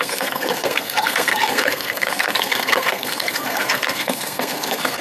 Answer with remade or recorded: remade